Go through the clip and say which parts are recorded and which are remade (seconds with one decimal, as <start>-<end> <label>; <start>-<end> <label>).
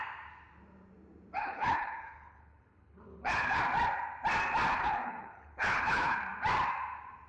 0.0-1.4 recorded; 1.4-3.6 remade; 3.6-4.7 recorded; 4.7-6.2 remade; 6.2-7.3 recorded